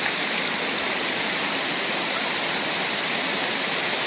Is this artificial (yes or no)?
no